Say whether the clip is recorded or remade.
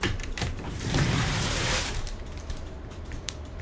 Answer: remade